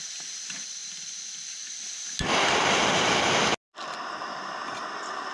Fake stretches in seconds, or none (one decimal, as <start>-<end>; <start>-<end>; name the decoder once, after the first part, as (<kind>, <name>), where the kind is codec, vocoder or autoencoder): none